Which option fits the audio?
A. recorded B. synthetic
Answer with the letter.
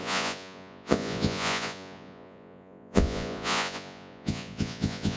B